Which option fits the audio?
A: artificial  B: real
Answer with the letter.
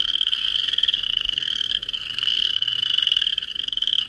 A